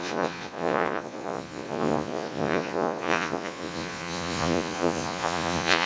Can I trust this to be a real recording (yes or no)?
no